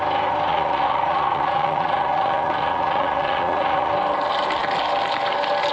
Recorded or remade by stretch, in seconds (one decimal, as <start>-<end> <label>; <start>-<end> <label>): 0.0-0.5 recorded; 0.5-3.9 remade; 3.9-5.7 recorded